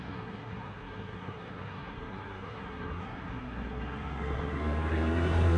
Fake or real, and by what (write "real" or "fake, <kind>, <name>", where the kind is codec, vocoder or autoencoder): fake, codec, SNAC